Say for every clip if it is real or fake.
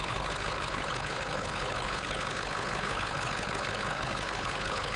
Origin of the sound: fake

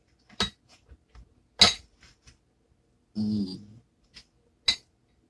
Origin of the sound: real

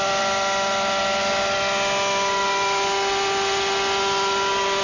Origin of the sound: real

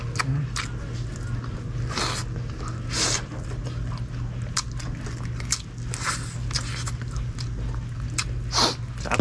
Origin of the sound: real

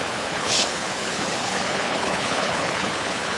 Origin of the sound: fake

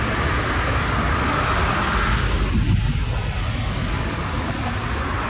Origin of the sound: real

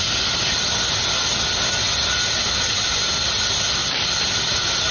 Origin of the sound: real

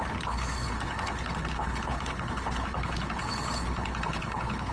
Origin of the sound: fake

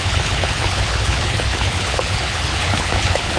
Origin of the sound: fake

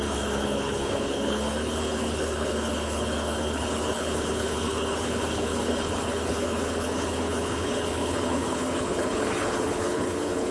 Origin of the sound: fake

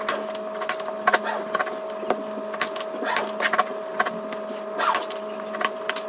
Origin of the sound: real